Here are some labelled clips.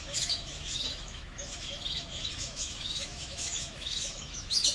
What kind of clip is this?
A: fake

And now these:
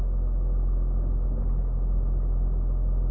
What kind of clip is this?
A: real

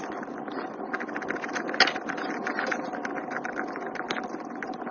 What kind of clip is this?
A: real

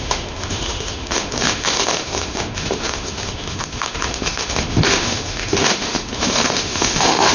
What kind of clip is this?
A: fake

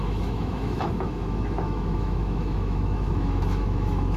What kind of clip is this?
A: fake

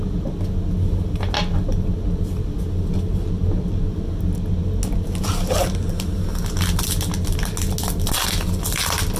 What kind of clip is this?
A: real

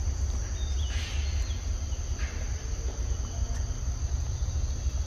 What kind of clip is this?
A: real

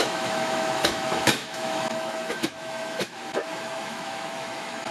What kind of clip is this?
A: fake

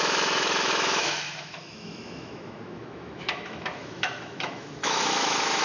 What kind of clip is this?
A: fake